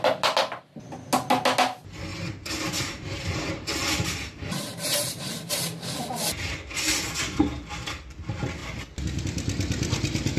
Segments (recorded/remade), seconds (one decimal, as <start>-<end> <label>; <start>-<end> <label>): 0.0-2.1 recorded; 2.1-5.5 remade; 5.5-10.4 recorded